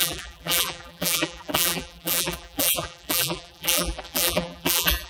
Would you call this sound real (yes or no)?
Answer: no